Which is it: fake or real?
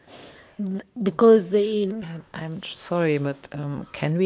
fake